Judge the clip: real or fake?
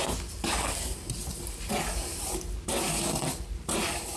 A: real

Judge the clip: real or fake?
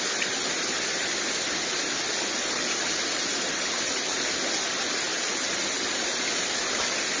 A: real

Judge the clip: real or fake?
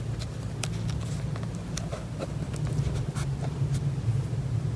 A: real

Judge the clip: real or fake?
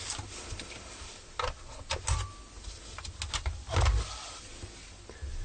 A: real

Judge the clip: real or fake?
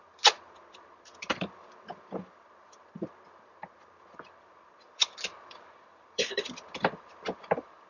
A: fake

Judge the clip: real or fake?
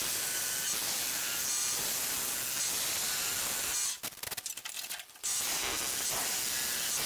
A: real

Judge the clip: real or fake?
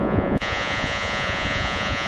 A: fake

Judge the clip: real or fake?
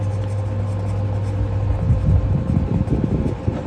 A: real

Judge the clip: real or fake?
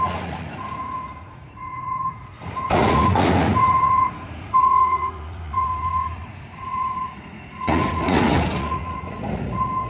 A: fake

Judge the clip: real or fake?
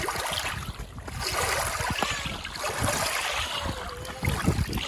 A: real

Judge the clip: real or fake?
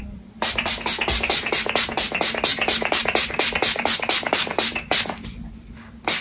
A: real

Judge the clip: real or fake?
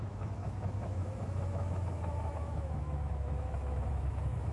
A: fake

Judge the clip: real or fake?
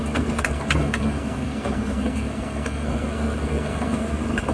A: fake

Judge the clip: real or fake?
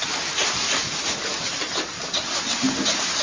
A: real